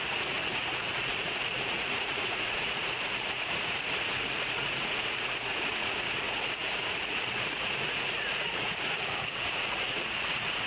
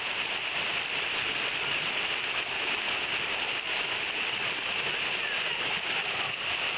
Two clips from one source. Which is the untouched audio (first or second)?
second